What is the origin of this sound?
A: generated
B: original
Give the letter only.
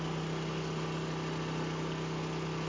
B